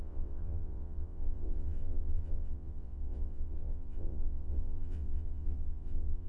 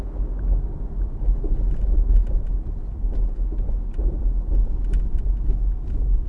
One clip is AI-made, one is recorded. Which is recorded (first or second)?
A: second